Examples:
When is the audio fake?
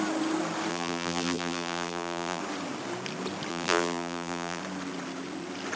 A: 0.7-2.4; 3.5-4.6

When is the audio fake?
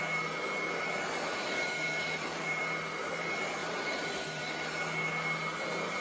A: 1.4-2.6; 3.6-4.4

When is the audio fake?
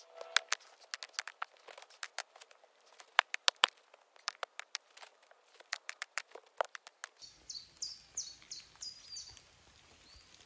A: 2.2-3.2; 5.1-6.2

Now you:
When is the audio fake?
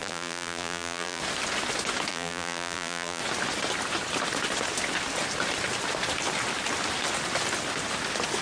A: 0.0-1.2; 2.1-3.2